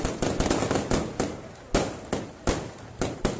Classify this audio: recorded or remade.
recorded